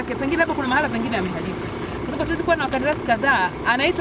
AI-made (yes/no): no